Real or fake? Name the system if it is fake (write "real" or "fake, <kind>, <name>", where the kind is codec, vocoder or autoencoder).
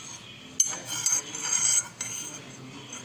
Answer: real